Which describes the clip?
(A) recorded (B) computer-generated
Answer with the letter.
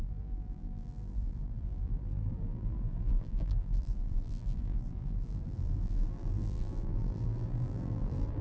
B